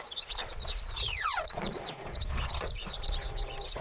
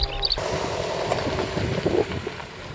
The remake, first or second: first